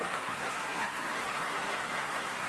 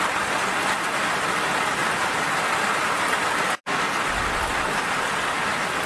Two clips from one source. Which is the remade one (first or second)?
first